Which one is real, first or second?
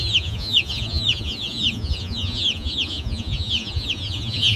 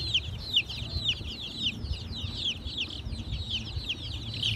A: second